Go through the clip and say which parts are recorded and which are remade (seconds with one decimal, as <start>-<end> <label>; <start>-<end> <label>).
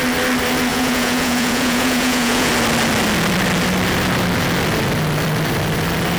0.0-0.7 recorded; 0.7-2.5 remade; 2.5-6.2 recorded